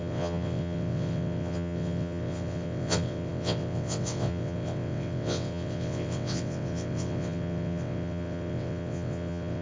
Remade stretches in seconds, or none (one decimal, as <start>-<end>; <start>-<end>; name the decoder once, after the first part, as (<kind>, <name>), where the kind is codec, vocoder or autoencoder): 0.0-9.6 (vocoder, WaveNeXt)